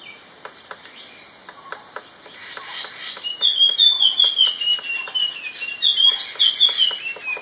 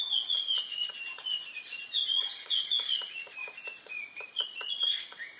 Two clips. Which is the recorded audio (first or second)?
first